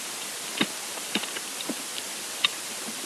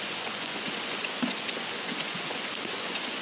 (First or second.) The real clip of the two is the first